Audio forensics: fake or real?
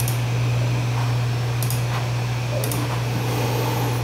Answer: real